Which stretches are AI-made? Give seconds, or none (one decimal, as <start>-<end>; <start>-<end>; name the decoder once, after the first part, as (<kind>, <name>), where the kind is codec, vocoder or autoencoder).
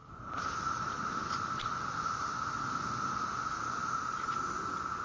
0.0-2.3 (vocoder, BigVGAN v2); 3.8-4.5